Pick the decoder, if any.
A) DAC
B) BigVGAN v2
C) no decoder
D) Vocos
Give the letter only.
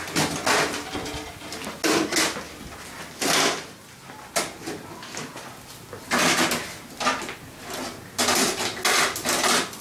C